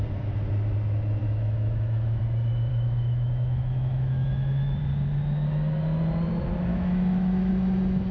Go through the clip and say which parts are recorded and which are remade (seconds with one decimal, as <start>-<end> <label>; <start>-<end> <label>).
0.0-1.2 recorded; 1.2-2.2 remade; 2.2-2.7 recorded; 2.7-4.8 remade; 4.8-6.7 recorded; 6.7-7.5 remade; 7.5-8.1 recorded